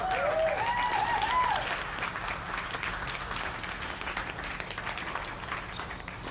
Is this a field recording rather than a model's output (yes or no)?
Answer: yes